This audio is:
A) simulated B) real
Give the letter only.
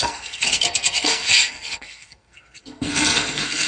A